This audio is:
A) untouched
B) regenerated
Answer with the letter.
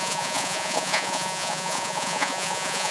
B